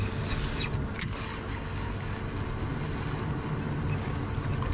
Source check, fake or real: real